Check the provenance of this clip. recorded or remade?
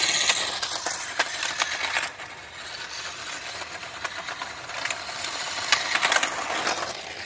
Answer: recorded